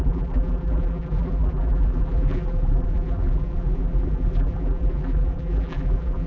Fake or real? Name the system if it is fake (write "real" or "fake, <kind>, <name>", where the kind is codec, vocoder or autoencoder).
fake, vocoder, BigVGAN v2